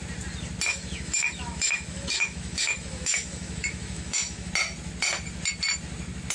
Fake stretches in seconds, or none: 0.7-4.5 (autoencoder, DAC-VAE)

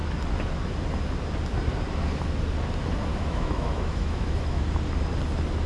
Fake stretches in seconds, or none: 3.1-4.6 (autoencoder, DAC-VAE)

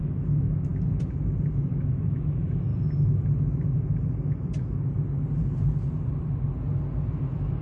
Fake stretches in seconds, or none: 0.0-0.7 (autoencoder, DAC-VAE); 1.5-2.7

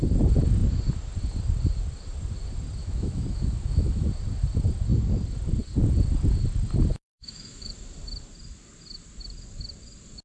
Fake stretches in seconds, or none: 2.8-4.1 (autoencoder, DAC-VAE); 6.9-7.7

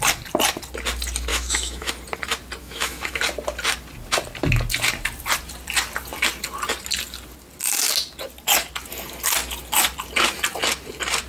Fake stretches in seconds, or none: 1.3-1.9 (autoencoder, DAC-VAE); 2.6-3.2

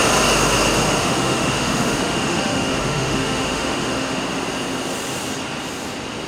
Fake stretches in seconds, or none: 1.0-4.2 (autoencoder, DAC-VAE)

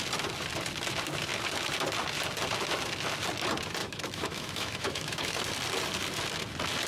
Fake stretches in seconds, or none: 3.8-5.4 (autoencoder, DAC-VAE)

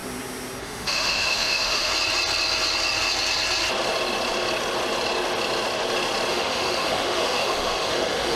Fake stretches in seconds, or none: 0.6-1.9 (autoencoder, DAC-VAE); 6.3-8.4